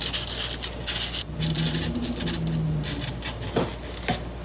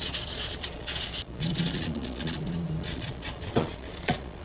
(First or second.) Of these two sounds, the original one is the first